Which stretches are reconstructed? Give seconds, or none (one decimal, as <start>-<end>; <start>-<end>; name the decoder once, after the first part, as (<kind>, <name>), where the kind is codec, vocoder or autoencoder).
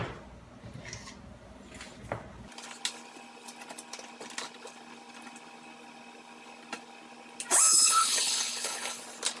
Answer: 7.7-9.0 (codec, HILCodec)